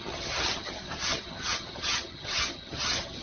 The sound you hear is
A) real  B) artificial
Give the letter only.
B